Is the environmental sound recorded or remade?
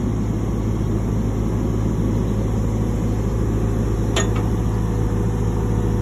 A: recorded